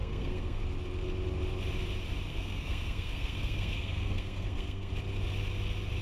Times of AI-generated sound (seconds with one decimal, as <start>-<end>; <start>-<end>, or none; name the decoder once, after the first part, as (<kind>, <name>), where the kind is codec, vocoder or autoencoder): 0.0-0.6 (codec, SNAC); 2.3-4.9